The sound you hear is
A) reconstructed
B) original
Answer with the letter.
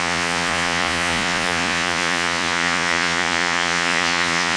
A